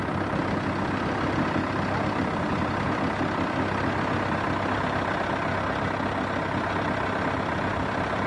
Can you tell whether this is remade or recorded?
recorded